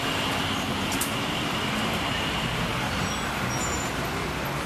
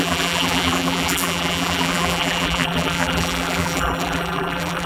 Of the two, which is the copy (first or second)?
second